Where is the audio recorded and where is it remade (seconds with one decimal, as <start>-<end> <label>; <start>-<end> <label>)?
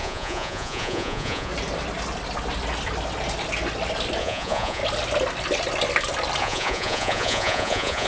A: 0.0-1.5 remade; 1.5-4.2 recorded; 4.2-4.8 remade; 4.8-6.4 recorded; 6.4-8.1 remade